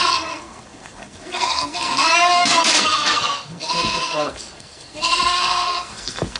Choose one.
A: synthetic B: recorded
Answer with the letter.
A